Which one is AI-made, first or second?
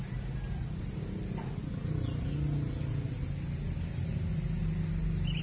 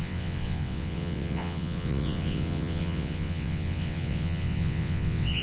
second